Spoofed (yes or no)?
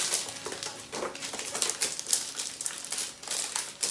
no